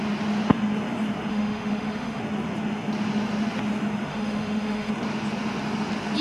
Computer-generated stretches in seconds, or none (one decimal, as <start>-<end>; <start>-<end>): 1.3-2.2; 4.1-4.9